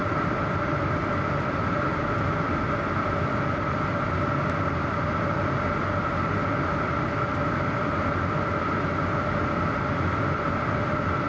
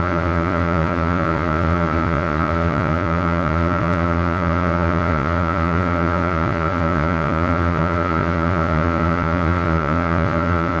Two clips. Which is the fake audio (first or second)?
second